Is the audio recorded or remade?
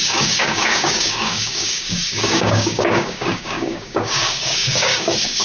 remade